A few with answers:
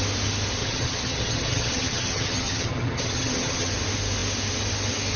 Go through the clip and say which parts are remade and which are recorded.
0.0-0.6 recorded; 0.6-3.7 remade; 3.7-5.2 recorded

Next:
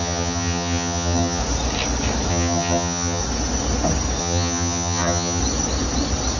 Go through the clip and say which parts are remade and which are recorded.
0.0-1.4 remade; 1.4-2.3 recorded; 2.3-3.2 remade; 3.2-4.2 recorded; 4.2-5.4 remade; 5.4-6.4 recorded

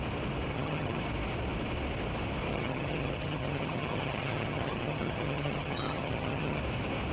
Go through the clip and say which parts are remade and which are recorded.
0.0-0.5 recorded; 0.5-1.0 remade; 1.0-2.5 recorded; 2.5-6.6 remade; 6.6-7.1 recorded

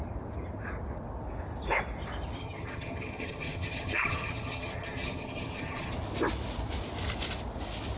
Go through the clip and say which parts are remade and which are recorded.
0.0-2.4 recorded; 2.4-5.9 remade; 5.9-8.0 recorded

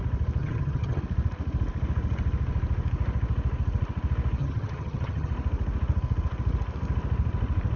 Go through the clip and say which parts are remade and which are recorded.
0.0-0.4 recorded; 0.4-1.0 remade; 1.0-4.4 recorded; 4.4-5.3 remade; 5.3-7.8 recorded

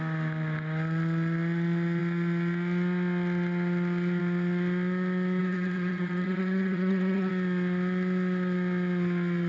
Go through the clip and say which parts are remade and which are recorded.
0.0-5.4 recorded; 5.4-7.3 remade; 7.3-9.5 recorded

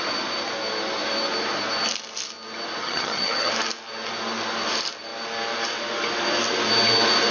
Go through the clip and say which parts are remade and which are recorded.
0.0-2.8 recorded; 2.8-3.5 remade; 3.5-7.3 recorded

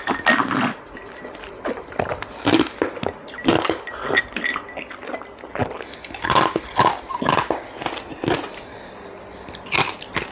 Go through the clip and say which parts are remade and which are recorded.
0.0-10.3 recorded